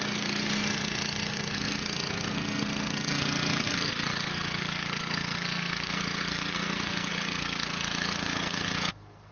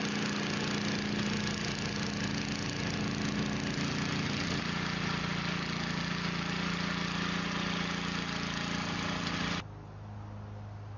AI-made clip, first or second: first